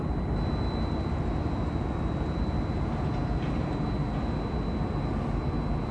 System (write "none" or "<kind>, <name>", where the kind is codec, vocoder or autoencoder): none